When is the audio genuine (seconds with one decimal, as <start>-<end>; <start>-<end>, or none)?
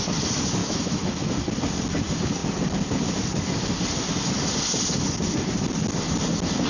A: 0.0-0.6; 1.3-6.7